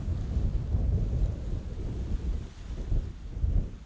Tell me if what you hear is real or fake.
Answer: real